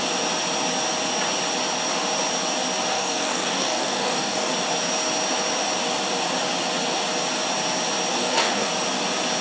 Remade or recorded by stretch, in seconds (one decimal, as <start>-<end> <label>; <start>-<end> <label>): 0.0-2.9 recorded; 2.9-4.5 remade; 4.5-8.1 recorded; 8.1-8.7 remade; 8.7-9.4 recorded